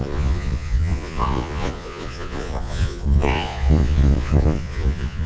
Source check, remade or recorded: remade